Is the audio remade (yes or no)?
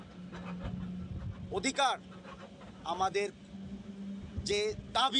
no